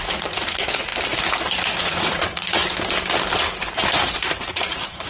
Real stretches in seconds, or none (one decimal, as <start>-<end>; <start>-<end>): 0.9-1.8; 2.6-3.8